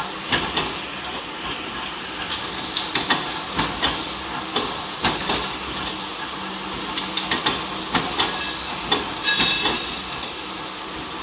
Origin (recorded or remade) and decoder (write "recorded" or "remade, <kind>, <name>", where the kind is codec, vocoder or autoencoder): recorded